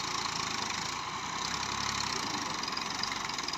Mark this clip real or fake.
real